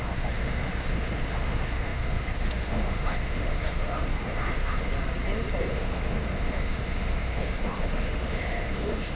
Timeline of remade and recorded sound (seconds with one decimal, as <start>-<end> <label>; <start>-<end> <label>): 0.0-4.9 remade; 4.9-5.6 recorded; 5.6-9.2 remade

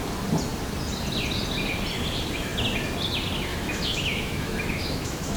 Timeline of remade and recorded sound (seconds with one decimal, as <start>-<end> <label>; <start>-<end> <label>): 0.0-3.5 recorded; 3.5-5.4 remade